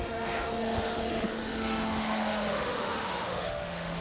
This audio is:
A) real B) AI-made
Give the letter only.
B